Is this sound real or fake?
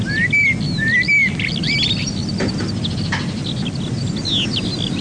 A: real